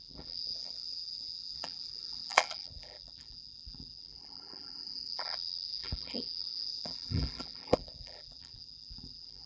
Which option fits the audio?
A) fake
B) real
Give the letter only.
A